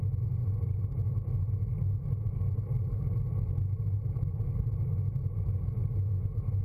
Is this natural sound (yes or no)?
yes